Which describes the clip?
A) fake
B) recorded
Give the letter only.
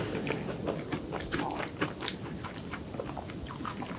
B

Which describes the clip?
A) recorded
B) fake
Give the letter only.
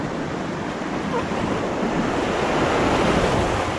A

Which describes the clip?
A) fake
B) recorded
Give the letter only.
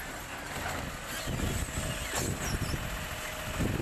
B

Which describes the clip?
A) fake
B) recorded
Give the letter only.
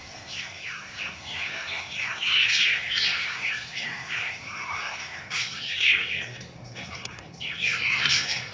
A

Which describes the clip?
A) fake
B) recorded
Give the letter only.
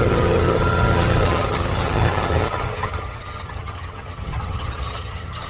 A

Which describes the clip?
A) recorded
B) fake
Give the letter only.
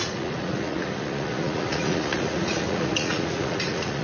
B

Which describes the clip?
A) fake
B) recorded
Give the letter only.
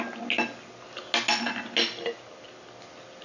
B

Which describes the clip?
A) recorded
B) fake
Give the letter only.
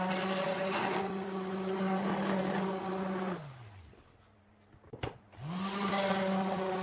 A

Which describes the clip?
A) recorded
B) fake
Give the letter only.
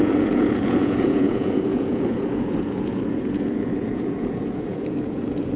B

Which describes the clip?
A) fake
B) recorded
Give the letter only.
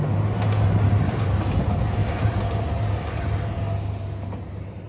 B